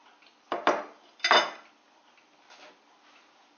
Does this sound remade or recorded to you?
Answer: recorded